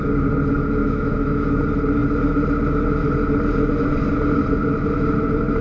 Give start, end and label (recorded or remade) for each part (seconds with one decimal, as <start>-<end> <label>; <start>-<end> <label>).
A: 0.0-0.8 recorded; 0.8-1.6 remade; 1.6-5.6 recorded